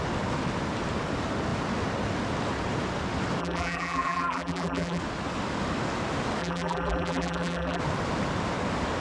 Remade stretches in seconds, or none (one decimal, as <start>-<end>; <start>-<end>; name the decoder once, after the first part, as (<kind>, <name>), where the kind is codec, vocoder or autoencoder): 3.4-5.0 (vocoder, BigVGAN v2); 6.4-7.8